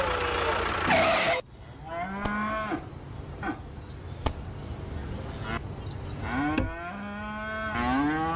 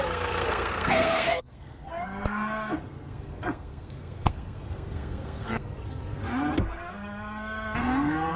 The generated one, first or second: second